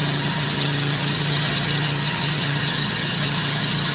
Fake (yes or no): yes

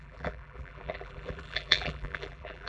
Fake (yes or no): yes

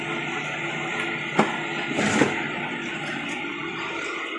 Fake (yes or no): no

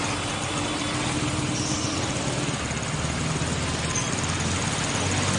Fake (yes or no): no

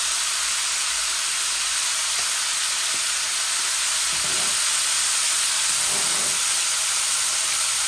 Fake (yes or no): no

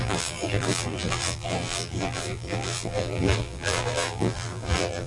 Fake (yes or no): yes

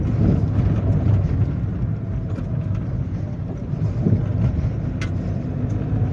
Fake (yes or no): no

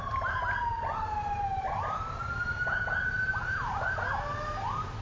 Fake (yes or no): yes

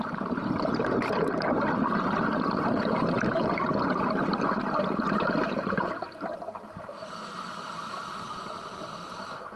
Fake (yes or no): yes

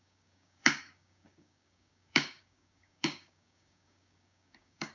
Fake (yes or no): yes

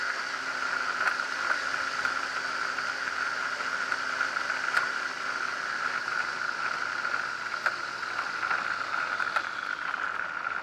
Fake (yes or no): no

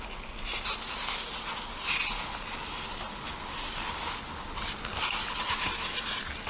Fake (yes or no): no